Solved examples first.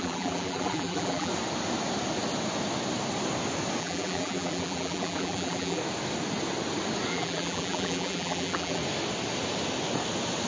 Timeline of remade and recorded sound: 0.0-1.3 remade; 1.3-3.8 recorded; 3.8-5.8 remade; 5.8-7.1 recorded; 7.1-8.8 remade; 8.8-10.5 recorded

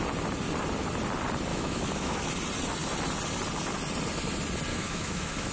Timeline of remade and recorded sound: 0.0-1.5 recorded; 1.5-2.2 remade; 2.2-4.7 recorded; 4.7-5.5 remade

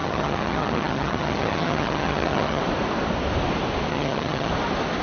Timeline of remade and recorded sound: 0.0-2.6 remade; 2.6-3.9 recorded; 3.9-4.5 remade; 4.5-5.0 recorded

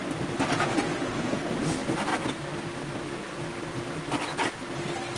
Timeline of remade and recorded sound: 0.0-0.6 recorded; 0.6-1.6 remade; 1.6-5.2 recorded

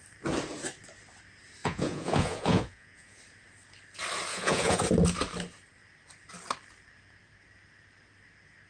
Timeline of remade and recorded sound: 0.0-1.6 recorded; 1.6-3.2 remade; 3.2-4.3 recorded; 4.3-4.8 remade; 4.8-8.7 recorded

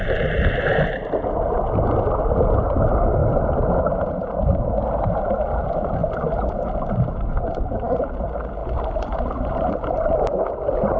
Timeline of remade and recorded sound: 0.0-11.0 recorded

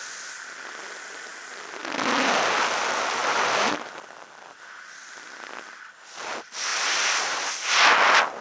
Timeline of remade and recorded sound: 0.0-8.4 recorded